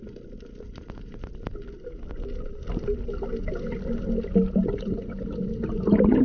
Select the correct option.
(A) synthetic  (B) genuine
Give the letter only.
B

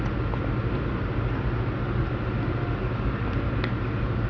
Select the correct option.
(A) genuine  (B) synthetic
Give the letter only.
A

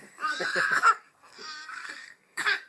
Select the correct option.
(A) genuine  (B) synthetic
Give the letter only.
B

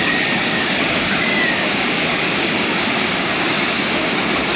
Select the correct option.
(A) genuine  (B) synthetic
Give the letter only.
B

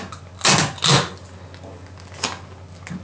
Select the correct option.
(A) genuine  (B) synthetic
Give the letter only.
A